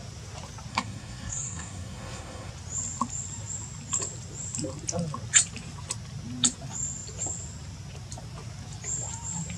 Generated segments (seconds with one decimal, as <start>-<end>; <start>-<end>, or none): 0.7-2.5